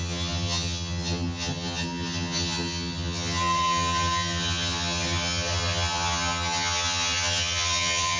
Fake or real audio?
fake